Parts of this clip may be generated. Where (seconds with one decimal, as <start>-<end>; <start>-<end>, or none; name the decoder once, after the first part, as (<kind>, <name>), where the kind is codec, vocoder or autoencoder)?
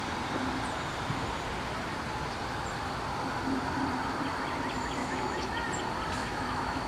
5.0-5.5 (autoencoder, DAC-VAE); 6.2-6.9